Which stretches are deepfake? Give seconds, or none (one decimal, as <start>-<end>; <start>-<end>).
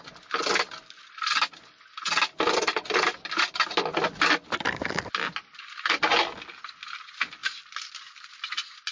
none